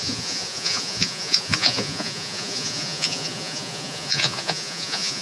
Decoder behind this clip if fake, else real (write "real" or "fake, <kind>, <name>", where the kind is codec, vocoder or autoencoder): fake, vocoder, Vocos